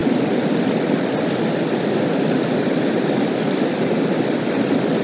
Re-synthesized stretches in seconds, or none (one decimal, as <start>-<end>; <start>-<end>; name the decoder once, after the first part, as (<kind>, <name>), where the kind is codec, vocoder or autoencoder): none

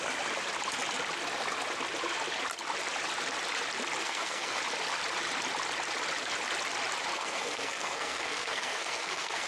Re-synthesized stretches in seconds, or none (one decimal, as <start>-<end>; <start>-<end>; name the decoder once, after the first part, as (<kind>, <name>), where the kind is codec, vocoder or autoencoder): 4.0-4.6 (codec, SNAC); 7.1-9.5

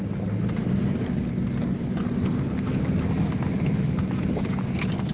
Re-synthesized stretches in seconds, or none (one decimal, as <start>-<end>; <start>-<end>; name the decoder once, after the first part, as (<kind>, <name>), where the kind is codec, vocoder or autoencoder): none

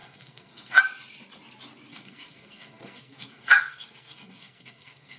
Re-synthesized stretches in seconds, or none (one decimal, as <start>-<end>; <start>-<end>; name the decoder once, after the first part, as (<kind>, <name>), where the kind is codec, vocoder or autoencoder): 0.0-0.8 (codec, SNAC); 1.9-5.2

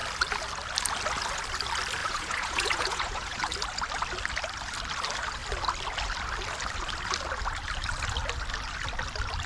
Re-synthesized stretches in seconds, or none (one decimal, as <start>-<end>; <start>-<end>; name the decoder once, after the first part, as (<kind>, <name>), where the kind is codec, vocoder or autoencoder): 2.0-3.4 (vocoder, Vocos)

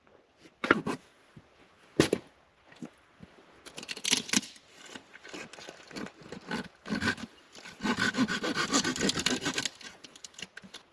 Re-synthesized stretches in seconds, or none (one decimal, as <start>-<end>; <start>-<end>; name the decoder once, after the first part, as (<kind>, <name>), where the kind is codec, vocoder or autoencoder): none